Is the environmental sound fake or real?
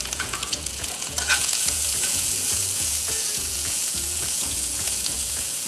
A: fake